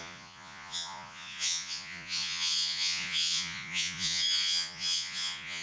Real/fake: fake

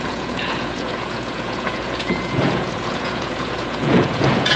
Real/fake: fake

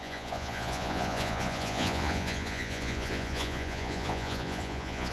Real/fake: fake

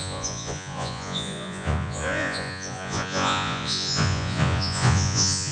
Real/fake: fake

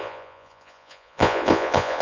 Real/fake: fake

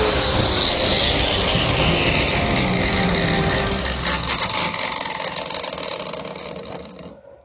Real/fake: real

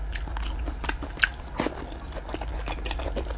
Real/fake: real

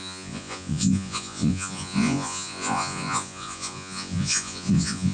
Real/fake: fake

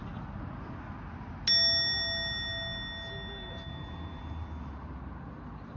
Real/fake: real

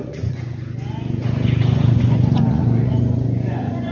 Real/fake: fake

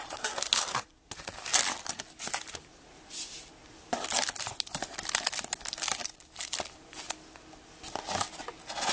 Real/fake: real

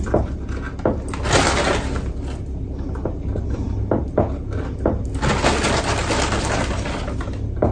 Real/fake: real